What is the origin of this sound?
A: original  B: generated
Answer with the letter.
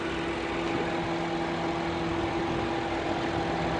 A